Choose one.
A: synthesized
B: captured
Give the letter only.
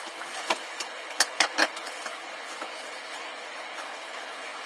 A